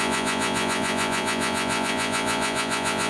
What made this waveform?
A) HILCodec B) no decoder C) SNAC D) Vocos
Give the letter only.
D